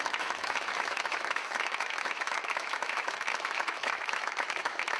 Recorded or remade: remade